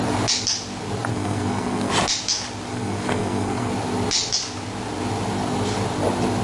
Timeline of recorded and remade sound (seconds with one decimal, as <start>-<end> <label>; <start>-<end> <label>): 0.0-1.1 recorded; 1.1-1.9 remade; 1.9-2.7 recorded; 2.7-3.7 remade; 3.7-6.4 recorded